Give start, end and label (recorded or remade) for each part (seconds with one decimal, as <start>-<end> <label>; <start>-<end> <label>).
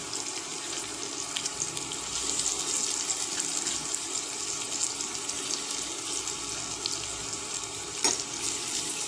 0.0-9.1 recorded